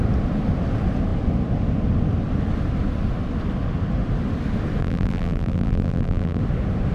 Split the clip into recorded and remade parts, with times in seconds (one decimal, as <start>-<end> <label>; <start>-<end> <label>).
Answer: 0.0-4.8 recorded; 4.8-6.4 remade; 6.4-6.9 recorded